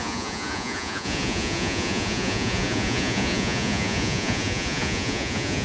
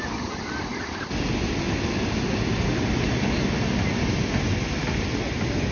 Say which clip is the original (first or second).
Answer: second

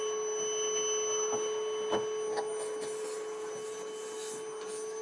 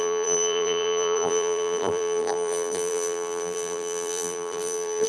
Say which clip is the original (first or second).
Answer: first